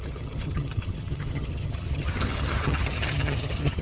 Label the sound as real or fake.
fake